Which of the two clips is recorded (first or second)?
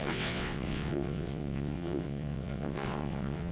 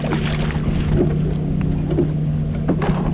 second